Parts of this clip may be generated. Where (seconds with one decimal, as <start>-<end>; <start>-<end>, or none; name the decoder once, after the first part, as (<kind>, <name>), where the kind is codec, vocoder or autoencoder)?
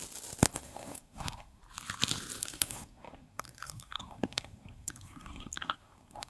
0.5-1.6 (codec, SNAC); 2.4-6.3